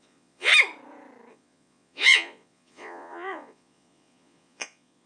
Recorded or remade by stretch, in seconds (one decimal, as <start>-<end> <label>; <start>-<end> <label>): 0.0-0.5 remade; 0.5-1.3 recorded; 1.3-5.1 remade